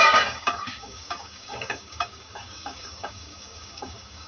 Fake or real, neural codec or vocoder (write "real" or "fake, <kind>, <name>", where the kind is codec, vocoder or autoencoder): fake, codec, DAC